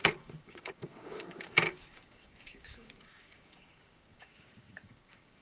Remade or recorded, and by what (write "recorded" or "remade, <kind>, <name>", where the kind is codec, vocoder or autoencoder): remade, codec, DAC